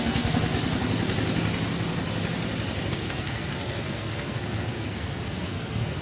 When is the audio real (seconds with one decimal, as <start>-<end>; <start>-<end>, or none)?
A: 0.5-2.9